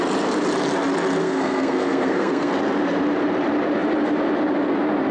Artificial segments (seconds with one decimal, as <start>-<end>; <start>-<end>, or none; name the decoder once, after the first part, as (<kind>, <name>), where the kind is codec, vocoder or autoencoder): 1.2-2.5 (codec, SNAC)